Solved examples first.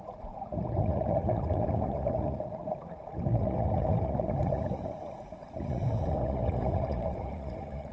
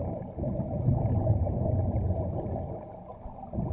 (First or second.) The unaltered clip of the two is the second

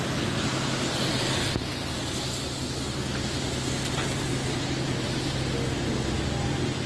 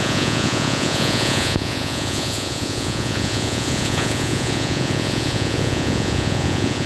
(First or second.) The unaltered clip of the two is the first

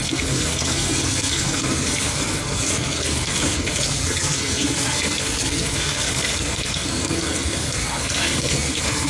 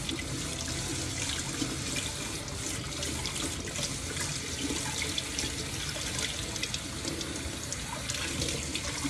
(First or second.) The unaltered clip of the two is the second